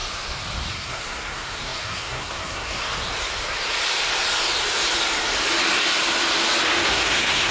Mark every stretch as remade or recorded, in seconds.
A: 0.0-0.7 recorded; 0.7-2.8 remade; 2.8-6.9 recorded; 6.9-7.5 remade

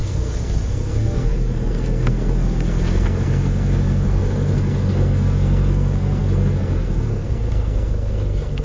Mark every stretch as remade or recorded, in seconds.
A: 0.0-8.6 remade